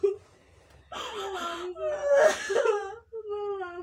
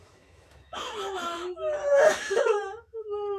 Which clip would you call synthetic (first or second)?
second